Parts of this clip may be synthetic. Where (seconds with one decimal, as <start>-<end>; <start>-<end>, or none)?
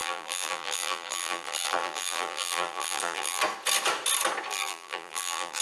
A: 0.0-3.4; 4.5-5.6